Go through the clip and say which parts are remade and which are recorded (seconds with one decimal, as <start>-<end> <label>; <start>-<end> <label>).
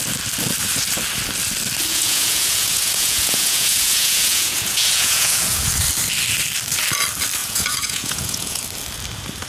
0.0-1.9 recorded; 1.9-5.7 remade; 5.7-7.4 recorded; 7.4-8.6 remade; 8.6-9.5 recorded